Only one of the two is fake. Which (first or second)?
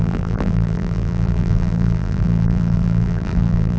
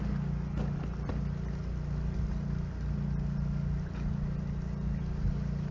first